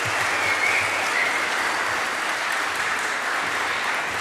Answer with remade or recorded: recorded